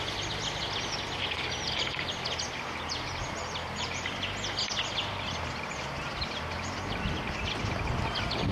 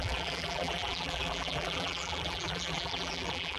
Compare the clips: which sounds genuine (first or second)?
first